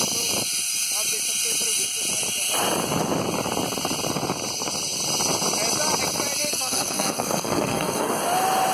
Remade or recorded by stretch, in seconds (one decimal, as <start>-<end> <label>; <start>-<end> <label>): 0.0-6.4 recorded; 6.4-8.2 remade; 8.2-8.7 recorded